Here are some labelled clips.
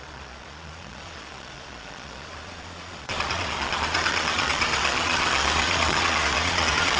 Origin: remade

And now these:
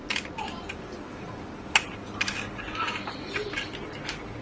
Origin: recorded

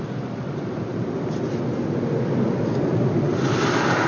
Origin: recorded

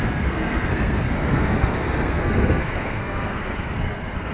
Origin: remade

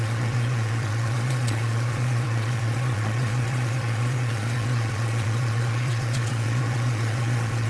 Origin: remade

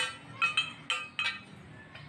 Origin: recorded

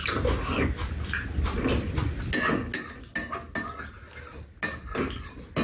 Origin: recorded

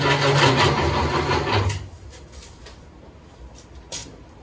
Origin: recorded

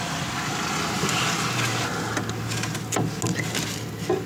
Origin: recorded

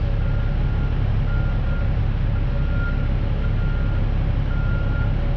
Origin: recorded